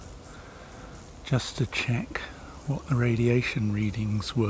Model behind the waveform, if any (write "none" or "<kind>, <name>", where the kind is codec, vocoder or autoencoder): none